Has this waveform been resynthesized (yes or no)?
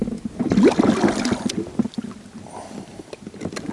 no